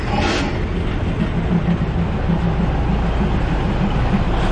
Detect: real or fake real